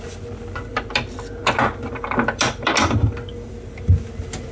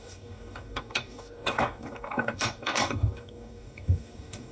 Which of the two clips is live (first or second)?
first